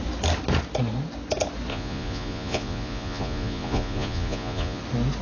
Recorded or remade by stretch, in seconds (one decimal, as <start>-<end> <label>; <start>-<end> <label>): 0.0-1.7 recorded; 1.7-4.8 remade; 4.8-5.2 recorded